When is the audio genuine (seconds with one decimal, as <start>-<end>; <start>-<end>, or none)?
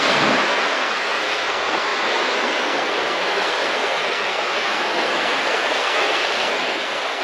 none